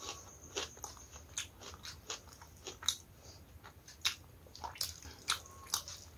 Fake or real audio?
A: real